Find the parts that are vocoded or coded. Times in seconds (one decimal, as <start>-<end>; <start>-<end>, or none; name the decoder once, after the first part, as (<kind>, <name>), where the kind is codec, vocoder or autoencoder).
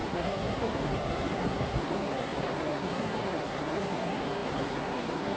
0.0-5.4 (codec, SNAC)